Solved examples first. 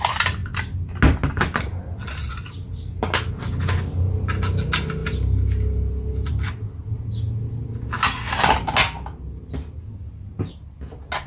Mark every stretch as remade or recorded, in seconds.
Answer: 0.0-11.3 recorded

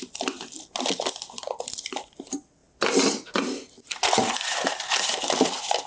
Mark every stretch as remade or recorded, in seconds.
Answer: 0.0-5.9 recorded

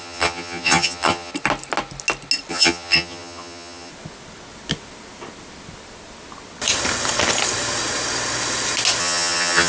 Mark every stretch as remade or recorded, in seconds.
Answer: 0.0-1.3 remade; 1.3-2.5 recorded; 2.5-3.9 remade; 3.9-9.0 recorded; 9.0-9.7 remade

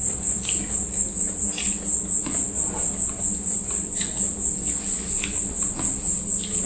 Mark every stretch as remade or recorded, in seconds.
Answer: 0.0-6.7 recorded